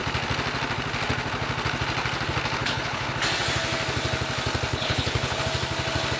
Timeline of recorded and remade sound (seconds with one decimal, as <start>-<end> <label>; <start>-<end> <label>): 0.0-2.6 recorded; 2.6-3.1 remade; 3.1-4.7 recorded; 4.7-5.4 remade; 5.4-6.2 recorded